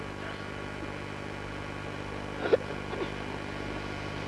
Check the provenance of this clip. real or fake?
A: real